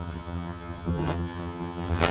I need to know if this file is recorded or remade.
remade